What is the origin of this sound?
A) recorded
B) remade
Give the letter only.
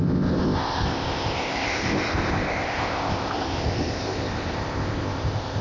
B